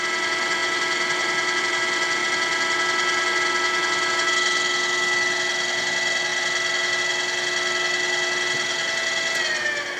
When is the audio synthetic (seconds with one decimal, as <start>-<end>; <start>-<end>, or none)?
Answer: none